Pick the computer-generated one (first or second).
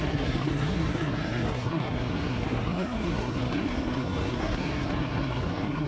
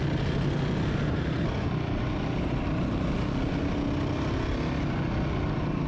first